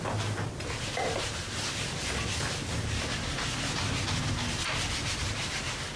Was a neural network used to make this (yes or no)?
no